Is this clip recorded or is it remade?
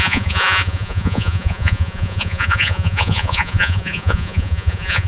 remade